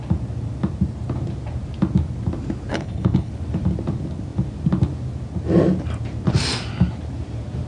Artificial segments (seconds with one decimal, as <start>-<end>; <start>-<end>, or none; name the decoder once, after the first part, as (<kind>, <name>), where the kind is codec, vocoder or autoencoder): 2.7-3.3 (codec, HILCodec)